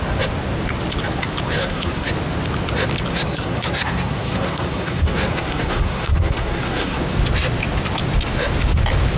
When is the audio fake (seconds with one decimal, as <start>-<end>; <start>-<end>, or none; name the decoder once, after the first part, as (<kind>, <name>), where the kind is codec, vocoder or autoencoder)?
1.6-2.1 (codec, SNAC); 3.1-7.0